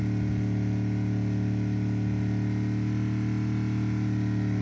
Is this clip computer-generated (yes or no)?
no